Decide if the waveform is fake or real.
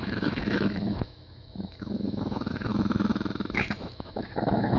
fake